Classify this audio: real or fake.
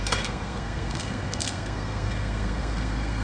fake